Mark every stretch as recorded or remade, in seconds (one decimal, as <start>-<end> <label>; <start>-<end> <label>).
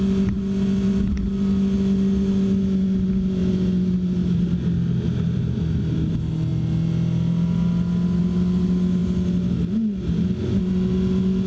0.0-11.5 recorded